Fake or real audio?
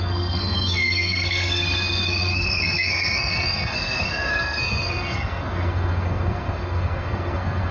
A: fake